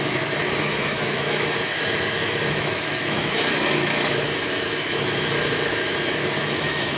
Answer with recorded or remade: remade